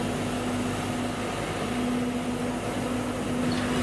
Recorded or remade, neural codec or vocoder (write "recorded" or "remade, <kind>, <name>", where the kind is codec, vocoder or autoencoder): recorded